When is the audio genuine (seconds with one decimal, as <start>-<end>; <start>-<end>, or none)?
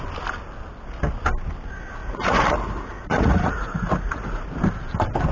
0.0-2.0; 4.4-5.3